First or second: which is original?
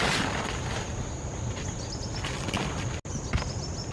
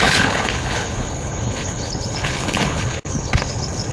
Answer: first